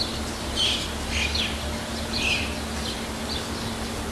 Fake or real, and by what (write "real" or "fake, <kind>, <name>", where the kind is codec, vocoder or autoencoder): real